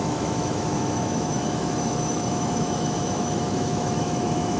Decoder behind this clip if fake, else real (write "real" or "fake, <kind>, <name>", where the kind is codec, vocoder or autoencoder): fake, autoencoder, DAC-VAE